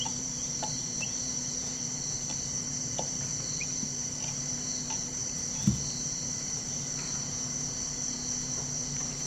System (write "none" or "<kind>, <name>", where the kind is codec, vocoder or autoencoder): vocoder, BigVGAN v2